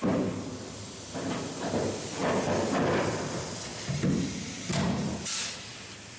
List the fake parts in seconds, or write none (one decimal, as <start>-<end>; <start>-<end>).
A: 0.0-2.2; 3.1-6.2